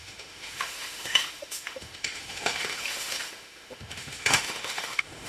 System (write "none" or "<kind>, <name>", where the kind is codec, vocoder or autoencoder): autoencoder, DAC-VAE